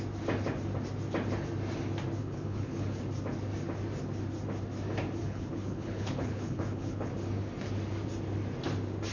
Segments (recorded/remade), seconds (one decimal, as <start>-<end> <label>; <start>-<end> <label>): 0.0-2.2 recorded; 2.2-3.0 remade; 3.0-5.2 recorded; 5.2-7.1 remade; 7.1-9.1 recorded